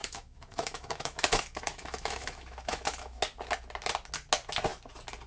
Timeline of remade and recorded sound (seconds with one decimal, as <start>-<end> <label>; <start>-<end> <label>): 0.0-3.2 remade; 3.2-5.3 recorded